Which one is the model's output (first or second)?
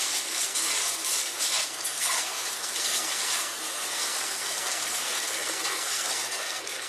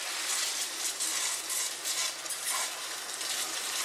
first